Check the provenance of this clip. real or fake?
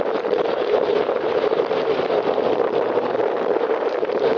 fake